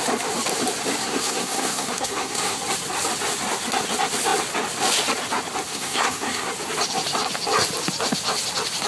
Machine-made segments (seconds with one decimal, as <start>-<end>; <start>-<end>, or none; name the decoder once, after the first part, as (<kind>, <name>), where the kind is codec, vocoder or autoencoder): 1.0-2.6 (codec, SNAC); 5.7-6.5